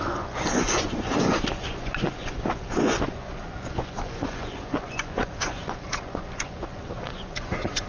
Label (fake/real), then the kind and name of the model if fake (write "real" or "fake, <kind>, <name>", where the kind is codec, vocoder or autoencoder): fake, vocoder, Vocos